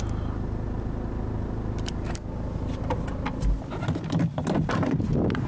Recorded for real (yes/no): yes